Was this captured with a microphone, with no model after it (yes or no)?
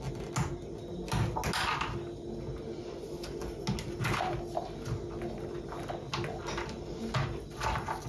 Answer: yes